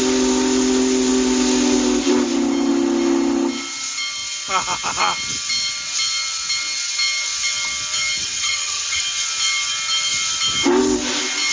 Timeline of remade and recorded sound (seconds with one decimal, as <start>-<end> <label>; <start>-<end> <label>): 0.0-8.2 recorded; 8.2-9.0 remade; 9.0-11.5 recorded